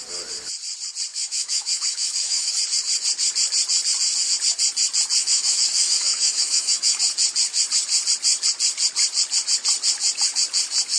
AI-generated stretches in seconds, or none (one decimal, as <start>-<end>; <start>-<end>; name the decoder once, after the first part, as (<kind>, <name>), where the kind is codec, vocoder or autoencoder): 1.1-2.5 (autoencoder, DAC-VAE); 5.2-7.0